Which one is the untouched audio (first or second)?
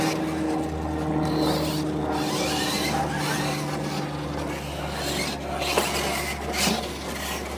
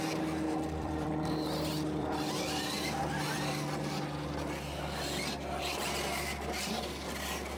first